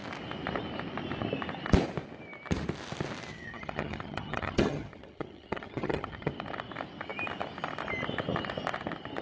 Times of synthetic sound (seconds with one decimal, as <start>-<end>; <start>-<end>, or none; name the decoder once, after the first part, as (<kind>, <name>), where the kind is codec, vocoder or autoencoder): 3.3-6.3 (vocoder, HiFi-GAN)